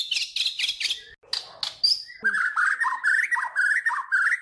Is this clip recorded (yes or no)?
yes